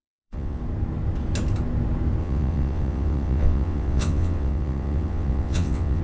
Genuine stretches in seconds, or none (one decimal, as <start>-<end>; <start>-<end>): 0.6-2.2